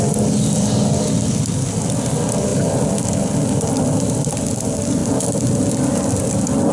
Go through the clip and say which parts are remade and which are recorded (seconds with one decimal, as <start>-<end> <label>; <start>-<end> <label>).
0.0-6.7 recorded